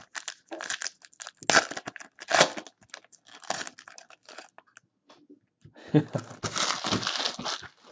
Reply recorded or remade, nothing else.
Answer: recorded